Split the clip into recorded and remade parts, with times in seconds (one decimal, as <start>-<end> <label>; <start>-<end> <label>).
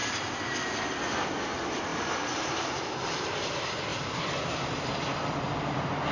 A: 0.0-1.0 remade; 1.0-1.9 recorded; 1.9-2.8 remade; 2.8-3.9 recorded; 3.9-5.0 remade; 5.0-6.1 recorded